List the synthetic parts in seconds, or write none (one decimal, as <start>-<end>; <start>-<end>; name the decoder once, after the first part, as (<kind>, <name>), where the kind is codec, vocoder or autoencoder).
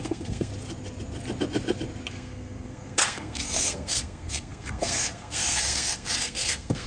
0.0-0.5 (codec, SNAC); 2.1-6.9